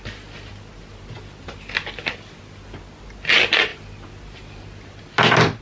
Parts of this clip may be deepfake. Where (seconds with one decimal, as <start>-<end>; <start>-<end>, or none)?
none

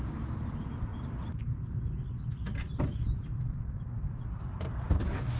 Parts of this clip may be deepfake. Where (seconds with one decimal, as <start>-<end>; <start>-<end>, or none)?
none

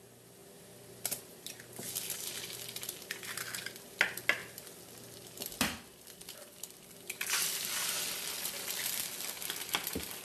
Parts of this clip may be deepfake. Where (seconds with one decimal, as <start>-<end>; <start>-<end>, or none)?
none

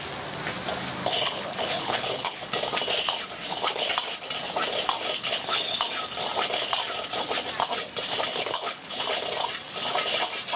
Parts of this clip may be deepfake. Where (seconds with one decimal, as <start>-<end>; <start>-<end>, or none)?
1.0-2.4; 3.4-3.9; 5.2-5.8; 8.3-9.0

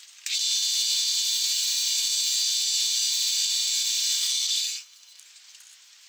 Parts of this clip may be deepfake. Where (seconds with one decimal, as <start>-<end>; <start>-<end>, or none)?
4.2-5.2

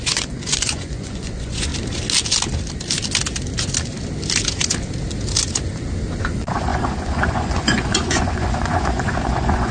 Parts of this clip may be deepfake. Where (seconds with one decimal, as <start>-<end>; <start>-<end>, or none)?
0.0-1.7; 6.2-9.7